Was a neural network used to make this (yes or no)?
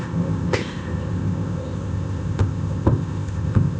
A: yes